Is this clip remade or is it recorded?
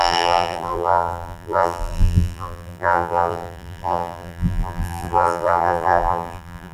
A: remade